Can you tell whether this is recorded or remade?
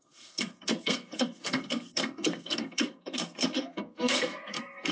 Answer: remade